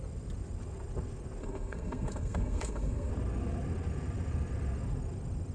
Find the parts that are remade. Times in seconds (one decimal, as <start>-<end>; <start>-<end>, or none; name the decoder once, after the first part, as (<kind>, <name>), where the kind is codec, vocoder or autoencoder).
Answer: 1.4-3.1 (codec, SNAC)